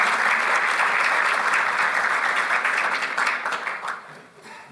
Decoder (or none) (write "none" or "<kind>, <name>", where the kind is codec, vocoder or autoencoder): none